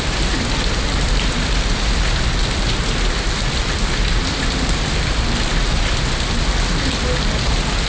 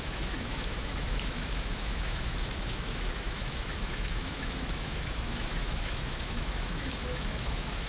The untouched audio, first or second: first